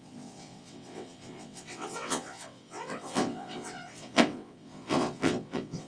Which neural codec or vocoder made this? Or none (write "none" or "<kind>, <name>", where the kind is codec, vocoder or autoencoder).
vocoder, WaveNeXt